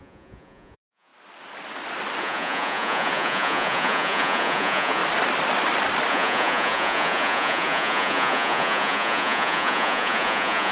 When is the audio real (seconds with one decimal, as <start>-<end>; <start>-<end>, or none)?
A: 1.1-2.2; 5.0-6.1